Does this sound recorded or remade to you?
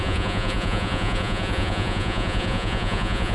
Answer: remade